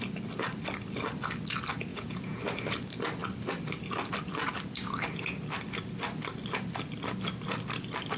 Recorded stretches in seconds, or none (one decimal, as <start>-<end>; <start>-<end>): 0.0-1.9; 2.4-8.2